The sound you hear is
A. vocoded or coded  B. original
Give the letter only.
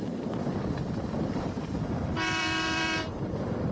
A